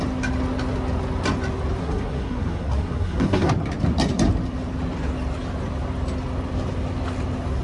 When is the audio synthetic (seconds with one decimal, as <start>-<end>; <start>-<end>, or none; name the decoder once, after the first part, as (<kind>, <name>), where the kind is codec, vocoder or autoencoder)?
1.8-3.5 (codec, SNAC)